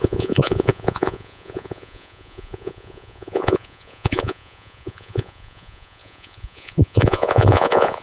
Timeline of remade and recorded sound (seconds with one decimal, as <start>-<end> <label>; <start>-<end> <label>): 0.0-8.0 remade